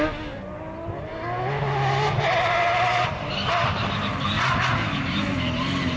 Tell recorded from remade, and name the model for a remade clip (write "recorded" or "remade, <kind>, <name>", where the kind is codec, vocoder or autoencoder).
recorded